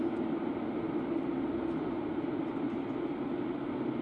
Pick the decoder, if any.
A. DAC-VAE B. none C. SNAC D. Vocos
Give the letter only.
B